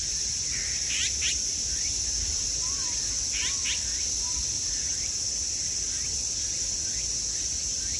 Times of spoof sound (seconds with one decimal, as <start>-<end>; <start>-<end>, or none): 1.5-2.5